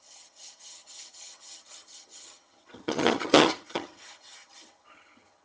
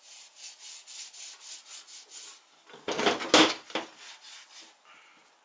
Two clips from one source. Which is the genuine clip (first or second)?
second